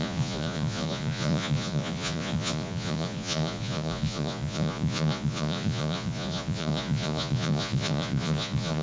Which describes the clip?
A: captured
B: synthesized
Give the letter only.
B